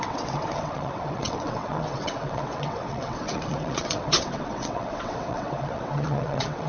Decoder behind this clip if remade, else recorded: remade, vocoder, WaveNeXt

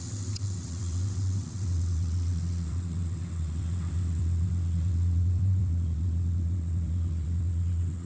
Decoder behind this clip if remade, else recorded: remade, vocoder, WaveNeXt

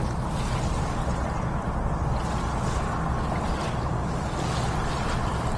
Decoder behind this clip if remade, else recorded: recorded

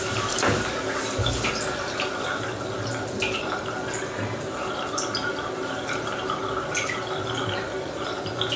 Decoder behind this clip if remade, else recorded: recorded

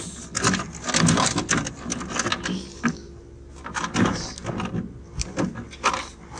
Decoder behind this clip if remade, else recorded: recorded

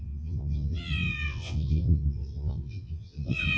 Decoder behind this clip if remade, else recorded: remade, vocoder, WaveNeXt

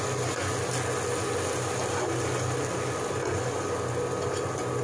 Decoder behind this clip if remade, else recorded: recorded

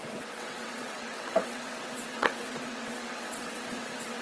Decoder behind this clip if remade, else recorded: remade, vocoder, WaveNeXt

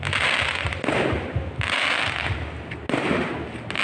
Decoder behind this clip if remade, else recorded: recorded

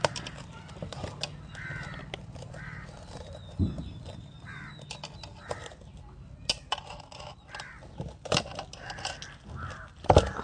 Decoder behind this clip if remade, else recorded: recorded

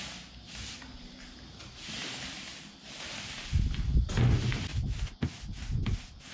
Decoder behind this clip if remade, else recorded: recorded